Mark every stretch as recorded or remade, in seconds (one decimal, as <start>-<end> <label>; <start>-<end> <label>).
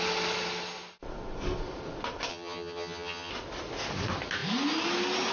0.0-2.3 recorded; 2.3-3.3 remade; 3.3-5.3 recorded